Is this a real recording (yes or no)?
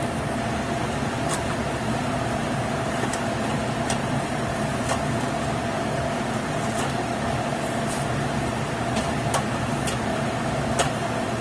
yes